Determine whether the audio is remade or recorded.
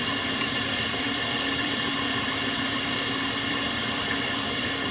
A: remade